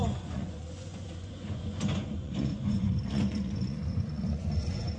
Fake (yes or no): yes